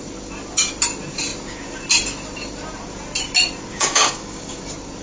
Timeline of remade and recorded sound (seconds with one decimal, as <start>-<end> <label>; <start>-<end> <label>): 0.0-3.7 recorded; 3.7-4.6 remade; 4.6-5.0 recorded